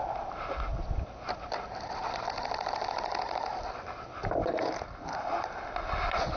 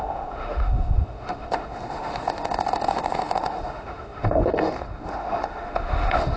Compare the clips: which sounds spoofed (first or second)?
second